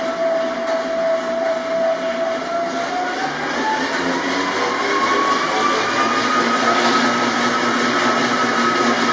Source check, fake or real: real